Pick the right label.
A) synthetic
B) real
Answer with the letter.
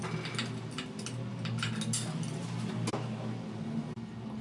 B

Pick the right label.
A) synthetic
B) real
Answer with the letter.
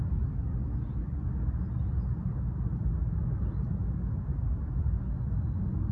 B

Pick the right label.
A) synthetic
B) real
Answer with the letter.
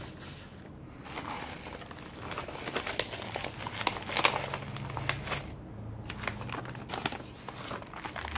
B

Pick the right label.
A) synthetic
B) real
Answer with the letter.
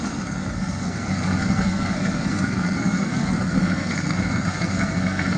A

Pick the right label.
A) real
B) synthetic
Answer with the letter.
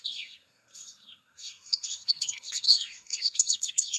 B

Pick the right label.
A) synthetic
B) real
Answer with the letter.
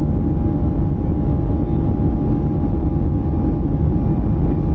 B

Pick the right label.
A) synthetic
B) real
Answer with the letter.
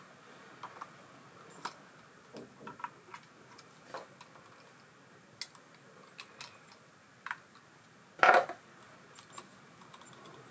B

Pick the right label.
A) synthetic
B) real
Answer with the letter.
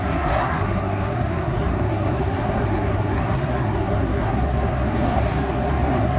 A